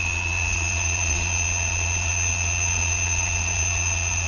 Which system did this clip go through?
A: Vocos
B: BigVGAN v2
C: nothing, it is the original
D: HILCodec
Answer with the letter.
A